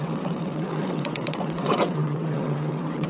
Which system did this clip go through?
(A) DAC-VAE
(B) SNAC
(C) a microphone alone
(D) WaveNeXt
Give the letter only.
D